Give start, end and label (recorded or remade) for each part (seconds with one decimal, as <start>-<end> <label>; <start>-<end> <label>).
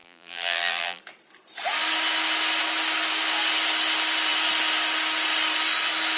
0.0-1.0 remade; 1.0-6.2 recorded